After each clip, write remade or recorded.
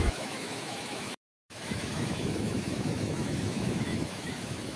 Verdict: remade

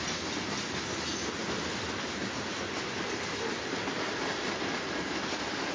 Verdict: recorded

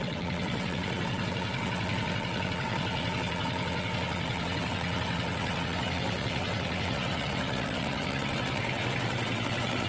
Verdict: remade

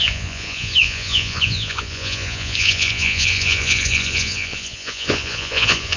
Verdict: remade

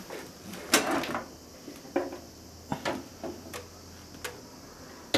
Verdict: recorded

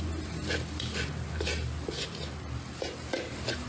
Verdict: recorded